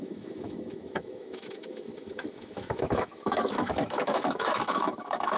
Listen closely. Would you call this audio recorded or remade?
remade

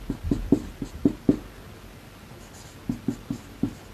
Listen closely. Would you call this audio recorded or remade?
recorded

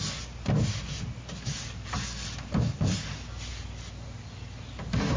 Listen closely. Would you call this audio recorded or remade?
recorded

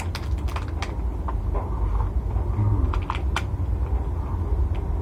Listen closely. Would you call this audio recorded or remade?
recorded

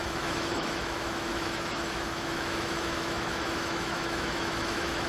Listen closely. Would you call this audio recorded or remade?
remade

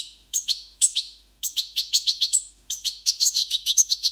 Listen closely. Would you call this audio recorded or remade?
remade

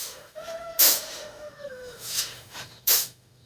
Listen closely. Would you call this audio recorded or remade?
remade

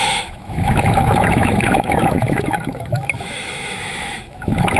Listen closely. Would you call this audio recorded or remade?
remade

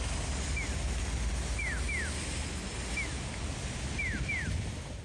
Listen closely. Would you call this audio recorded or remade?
recorded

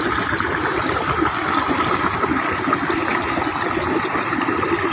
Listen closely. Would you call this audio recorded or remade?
recorded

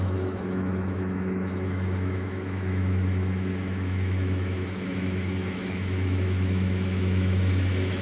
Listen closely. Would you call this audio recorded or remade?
remade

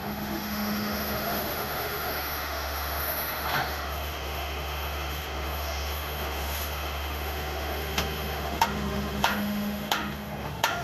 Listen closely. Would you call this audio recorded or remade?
remade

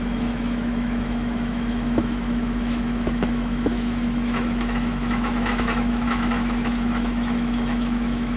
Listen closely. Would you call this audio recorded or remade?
remade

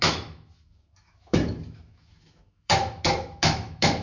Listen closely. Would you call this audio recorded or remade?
remade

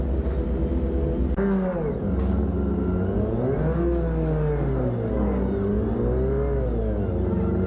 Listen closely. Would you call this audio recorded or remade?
recorded